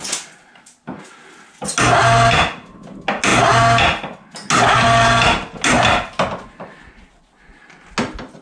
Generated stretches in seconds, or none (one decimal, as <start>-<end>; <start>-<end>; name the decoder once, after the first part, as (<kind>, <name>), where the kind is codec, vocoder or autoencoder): none